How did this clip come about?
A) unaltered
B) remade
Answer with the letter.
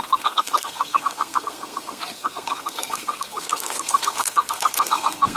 B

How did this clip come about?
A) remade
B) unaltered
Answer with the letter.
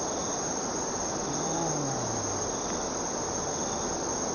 B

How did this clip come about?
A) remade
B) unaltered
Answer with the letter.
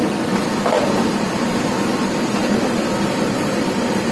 A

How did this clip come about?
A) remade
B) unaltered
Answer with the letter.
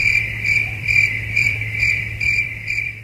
A